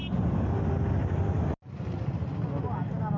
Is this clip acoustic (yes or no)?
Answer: yes